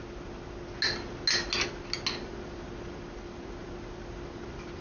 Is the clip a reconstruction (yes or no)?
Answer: no